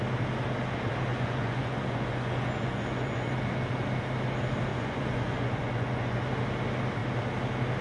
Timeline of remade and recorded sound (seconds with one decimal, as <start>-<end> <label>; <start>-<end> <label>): 0.0-1.1 recorded; 1.1-3.3 remade; 3.3-4.7 recorded; 4.7-6.2 remade; 6.2-7.8 recorded